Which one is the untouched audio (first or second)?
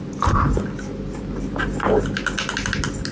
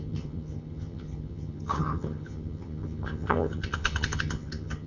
first